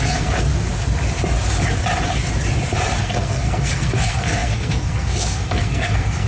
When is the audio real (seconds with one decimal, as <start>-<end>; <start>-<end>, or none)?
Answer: 0.5-3.0